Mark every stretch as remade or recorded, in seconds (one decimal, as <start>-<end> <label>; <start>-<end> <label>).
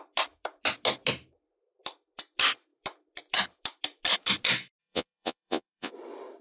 0.0-4.8 recorded; 4.8-5.9 remade; 5.9-6.4 recorded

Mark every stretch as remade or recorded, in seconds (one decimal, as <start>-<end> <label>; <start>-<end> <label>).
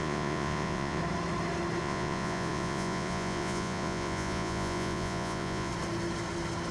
0.0-1.0 remade; 1.0-1.8 recorded; 1.8-5.7 remade; 5.7-6.7 recorded